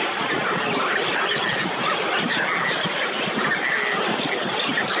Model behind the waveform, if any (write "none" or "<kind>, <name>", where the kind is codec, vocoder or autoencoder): none